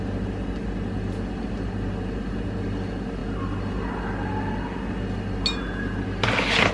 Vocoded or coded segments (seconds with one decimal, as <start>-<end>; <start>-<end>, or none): none